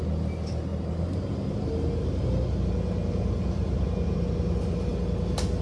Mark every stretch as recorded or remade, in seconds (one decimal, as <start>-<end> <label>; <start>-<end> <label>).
0.0-5.6 recorded